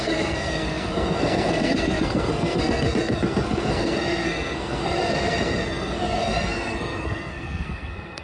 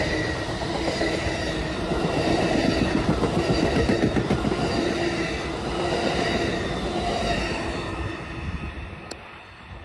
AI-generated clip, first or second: first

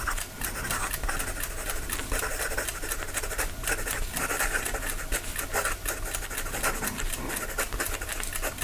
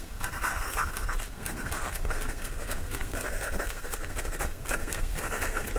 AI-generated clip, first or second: second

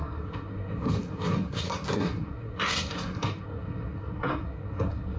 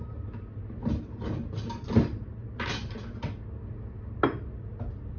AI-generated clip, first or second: first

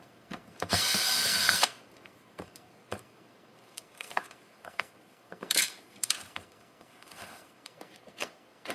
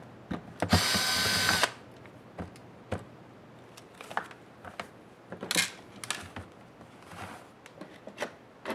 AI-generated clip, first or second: first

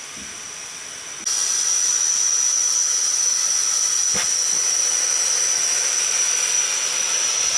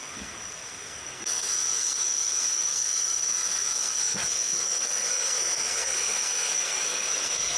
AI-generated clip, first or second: second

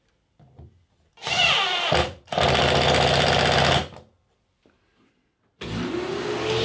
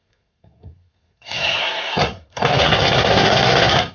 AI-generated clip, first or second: second